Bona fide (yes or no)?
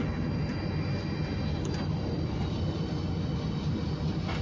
yes